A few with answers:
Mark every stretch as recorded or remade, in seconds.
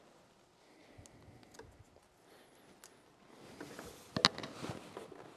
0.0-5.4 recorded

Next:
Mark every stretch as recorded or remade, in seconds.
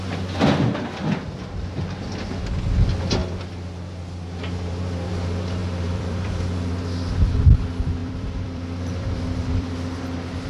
0.0-5.6 recorded; 5.6-6.7 remade; 6.7-8.0 recorded; 8.0-9.7 remade; 9.7-10.5 recorded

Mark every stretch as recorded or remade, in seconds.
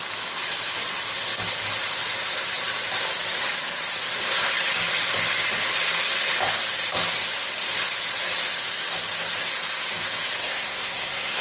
0.0-10.4 recorded; 10.4-11.4 remade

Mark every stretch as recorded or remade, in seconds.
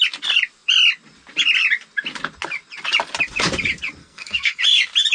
0.0-4.0 recorded; 4.0-4.6 remade; 4.6-5.1 recorded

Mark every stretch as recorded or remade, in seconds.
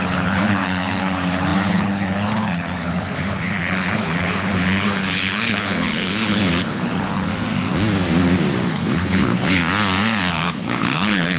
0.0-7.3 remade; 7.3-8.7 recorded; 8.7-9.6 remade; 9.6-10.3 recorded; 10.3-11.4 remade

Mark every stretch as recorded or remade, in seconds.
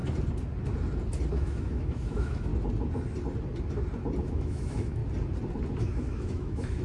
0.0-1.3 recorded; 1.3-2.5 remade; 2.5-4.2 recorded; 4.2-5.0 remade; 5.0-5.8 recorded; 5.8-6.8 remade